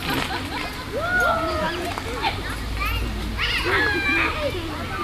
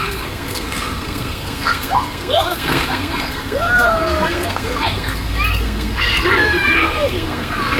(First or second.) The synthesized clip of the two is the second